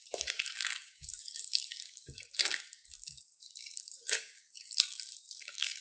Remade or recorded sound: remade